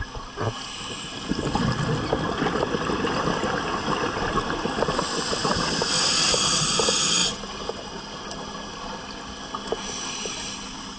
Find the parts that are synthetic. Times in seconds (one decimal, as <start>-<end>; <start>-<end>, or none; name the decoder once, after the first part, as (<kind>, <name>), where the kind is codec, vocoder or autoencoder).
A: none